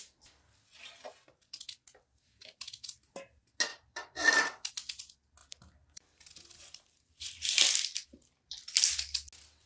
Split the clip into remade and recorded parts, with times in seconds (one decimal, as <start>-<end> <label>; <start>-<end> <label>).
0.0-3.7 recorded; 3.7-4.7 remade; 4.7-5.4 recorded; 5.4-9.0 remade; 9.0-9.7 recorded